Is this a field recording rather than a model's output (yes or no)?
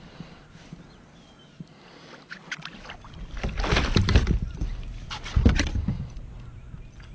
yes